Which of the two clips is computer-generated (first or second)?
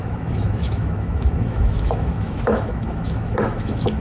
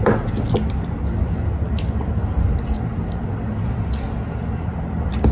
first